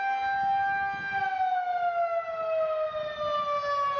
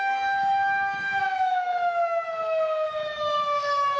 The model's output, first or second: second